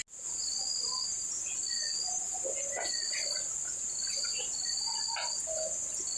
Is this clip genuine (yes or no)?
yes